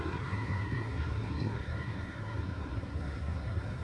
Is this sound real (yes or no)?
no